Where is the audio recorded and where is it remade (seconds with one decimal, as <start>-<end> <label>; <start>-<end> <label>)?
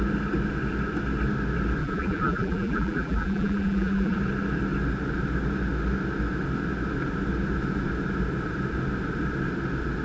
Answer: 0.0-1.8 recorded; 1.8-4.2 remade; 4.2-10.0 recorded